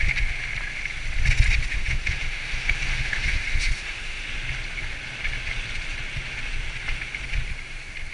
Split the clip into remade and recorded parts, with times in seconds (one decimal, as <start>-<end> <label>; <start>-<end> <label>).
0.0-1.7 recorded; 1.7-4.2 remade; 4.2-8.1 recorded